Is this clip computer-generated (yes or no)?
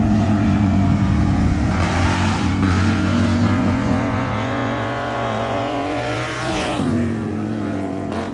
yes